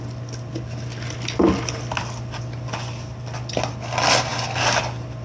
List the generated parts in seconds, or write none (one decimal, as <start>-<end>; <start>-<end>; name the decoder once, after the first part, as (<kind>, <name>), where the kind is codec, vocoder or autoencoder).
none